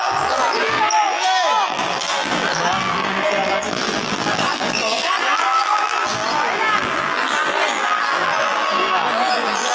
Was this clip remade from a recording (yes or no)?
yes